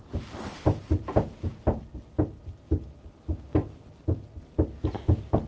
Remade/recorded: recorded